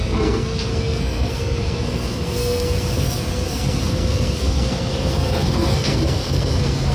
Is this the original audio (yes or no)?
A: no